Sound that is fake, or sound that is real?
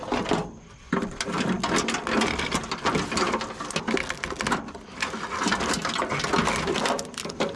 real